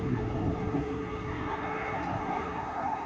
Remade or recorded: remade